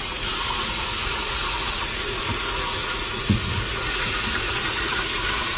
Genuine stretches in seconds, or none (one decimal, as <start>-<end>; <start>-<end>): none